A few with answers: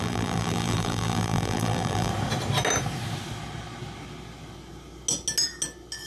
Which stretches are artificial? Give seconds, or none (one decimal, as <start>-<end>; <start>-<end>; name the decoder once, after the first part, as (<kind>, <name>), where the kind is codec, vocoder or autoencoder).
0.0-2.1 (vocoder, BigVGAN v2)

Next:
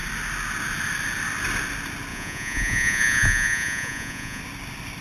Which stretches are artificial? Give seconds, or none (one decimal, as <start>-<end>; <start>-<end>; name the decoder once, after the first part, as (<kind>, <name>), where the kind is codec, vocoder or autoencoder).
2.1-4.4 (vocoder, Vocos)

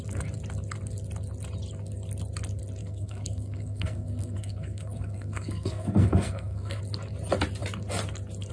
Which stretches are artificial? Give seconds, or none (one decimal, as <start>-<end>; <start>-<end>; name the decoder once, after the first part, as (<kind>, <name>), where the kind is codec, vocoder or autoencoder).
2.8-6.8 (codec, SNAC)

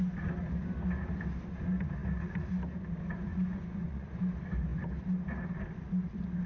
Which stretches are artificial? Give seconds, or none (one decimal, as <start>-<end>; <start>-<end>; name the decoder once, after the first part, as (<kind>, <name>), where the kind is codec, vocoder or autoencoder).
3.3-4.1 (vocoder, Vocos)

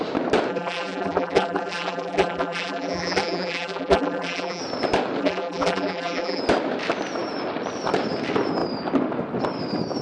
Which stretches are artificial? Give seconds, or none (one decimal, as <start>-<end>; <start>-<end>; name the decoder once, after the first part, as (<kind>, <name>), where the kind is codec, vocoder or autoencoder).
0.5-4.6 (vocoder, BigVGAN v2); 5.2-6.4

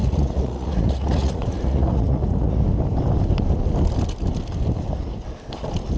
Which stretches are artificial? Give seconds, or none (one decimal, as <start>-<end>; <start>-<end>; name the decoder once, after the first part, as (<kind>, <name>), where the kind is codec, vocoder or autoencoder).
0.0-2.6 (vocoder, Vocos)

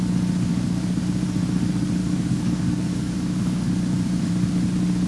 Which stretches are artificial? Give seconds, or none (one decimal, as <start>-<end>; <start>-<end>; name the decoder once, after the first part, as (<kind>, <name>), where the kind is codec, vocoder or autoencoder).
0.5-1.0 (codec, DAC); 2.0-4.3